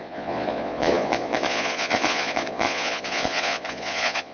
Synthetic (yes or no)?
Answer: yes